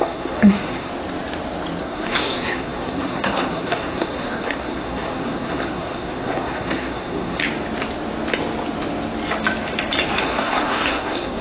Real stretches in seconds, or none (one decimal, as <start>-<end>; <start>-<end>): 0.9-1.8; 7.4-10.2